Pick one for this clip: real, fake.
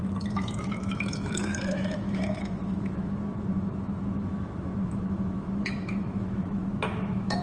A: fake